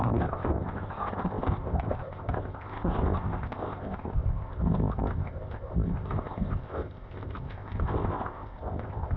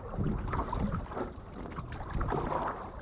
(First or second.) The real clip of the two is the second